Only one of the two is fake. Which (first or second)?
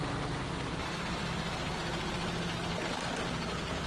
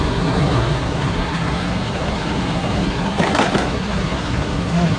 second